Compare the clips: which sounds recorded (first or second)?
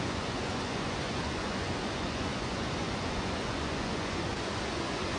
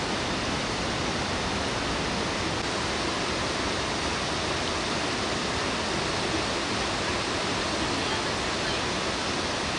second